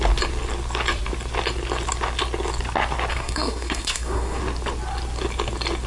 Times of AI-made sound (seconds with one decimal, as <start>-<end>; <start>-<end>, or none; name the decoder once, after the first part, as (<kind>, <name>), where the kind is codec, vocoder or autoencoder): 3.1-4.4 (codec, SNAC)

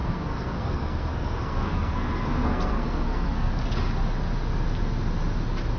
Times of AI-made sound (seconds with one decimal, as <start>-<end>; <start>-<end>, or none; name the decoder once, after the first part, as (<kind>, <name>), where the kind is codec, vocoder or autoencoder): 0.0-3.5 (codec, SNAC)